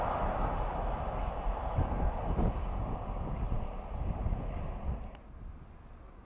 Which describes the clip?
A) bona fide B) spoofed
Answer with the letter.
A